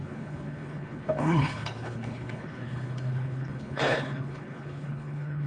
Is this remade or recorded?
remade